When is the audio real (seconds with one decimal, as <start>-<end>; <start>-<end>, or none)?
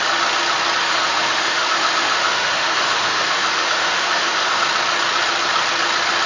0.0-0.8; 4.6-6.3